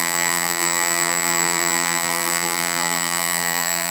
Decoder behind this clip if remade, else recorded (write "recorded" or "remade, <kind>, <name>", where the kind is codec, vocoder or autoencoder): remade, vocoder, BigVGAN v2